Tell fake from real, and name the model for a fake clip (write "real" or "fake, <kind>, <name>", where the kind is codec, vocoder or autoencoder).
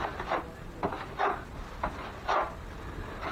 fake, vocoder, BigVGAN v2